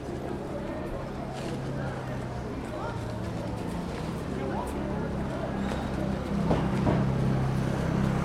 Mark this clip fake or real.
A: real